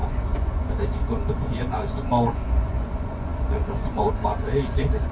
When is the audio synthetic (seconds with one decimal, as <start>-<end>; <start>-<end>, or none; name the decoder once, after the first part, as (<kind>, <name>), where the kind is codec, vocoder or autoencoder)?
0.0-5.1 (vocoder, Vocos)